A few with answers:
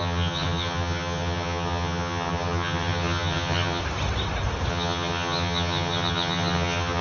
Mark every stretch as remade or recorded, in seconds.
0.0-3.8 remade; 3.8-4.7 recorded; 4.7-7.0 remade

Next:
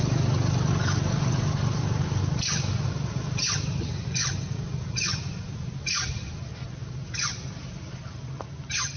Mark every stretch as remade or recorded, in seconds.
0.0-6.8 recorded; 6.8-7.9 remade; 7.9-9.0 recorded

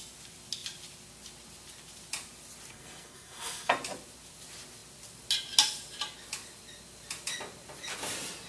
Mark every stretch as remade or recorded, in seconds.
0.0-2.7 recorded; 2.7-3.7 remade; 3.7-8.5 recorded

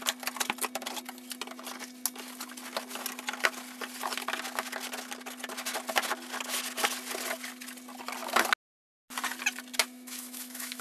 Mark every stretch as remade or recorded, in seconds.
0.0-9.8 recorded; 9.8-10.8 remade

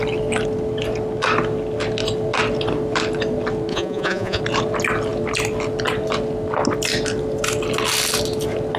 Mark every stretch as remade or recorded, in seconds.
0.0-3.7 recorded; 3.7-4.4 remade; 4.4-8.8 recorded

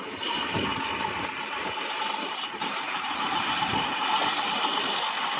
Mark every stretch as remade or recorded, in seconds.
0.0-0.7 recorded; 0.7-3.9 remade; 3.9-5.4 recorded

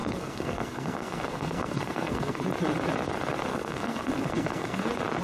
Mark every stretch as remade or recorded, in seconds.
0.0-2.4 remade; 2.4-3.5 recorded; 3.5-4.8 remade; 4.8-5.2 recorded